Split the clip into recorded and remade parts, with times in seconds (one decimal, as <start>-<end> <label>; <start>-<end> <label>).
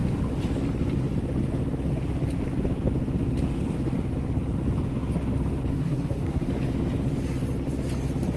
0.0-5.7 recorded; 5.7-6.5 remade; 6.5-8.4 recorded